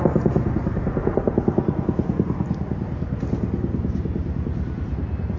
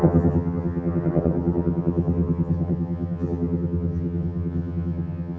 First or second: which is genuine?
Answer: first